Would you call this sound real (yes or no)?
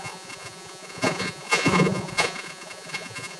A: no